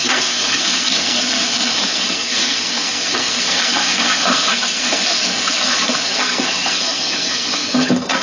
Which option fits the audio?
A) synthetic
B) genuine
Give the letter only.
A